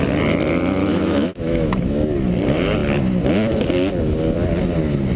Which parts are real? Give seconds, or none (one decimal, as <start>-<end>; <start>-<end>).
0.0-0.8; 1.7-5.2